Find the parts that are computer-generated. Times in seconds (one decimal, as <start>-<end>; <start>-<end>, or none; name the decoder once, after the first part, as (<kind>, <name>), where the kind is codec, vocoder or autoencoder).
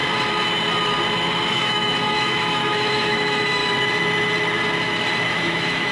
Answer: 1.5-3.6 (autoencoder, DAC-VAE); 5.3-5.9